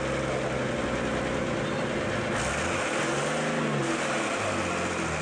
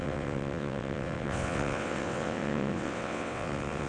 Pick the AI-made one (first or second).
second